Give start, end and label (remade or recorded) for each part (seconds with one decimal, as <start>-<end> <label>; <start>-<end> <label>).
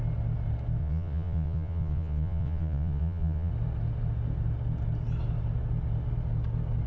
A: 0.0-0.8 recorded; 0.8-3.5 remade; 3.5-6.9 recorded